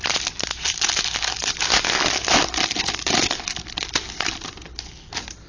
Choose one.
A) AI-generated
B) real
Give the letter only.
B